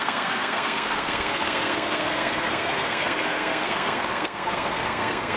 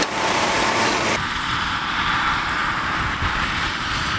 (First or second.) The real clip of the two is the second